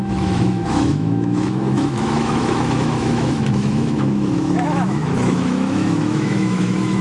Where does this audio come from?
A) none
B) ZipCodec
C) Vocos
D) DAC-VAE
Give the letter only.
D